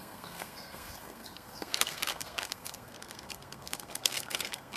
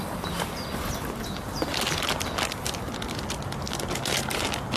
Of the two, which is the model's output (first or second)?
first